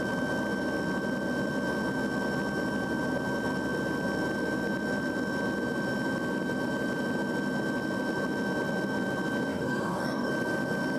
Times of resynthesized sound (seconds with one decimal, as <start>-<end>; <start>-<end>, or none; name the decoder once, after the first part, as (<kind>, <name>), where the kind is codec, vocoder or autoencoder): 9.5-10.3 (codec, DAC)